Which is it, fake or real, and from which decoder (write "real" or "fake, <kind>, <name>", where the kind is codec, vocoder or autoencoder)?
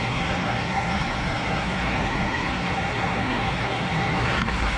fake, codec, SNAC